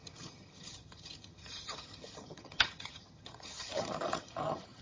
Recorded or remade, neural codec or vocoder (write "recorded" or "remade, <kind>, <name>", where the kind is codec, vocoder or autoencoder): remade, vocoder, HiFi-GAN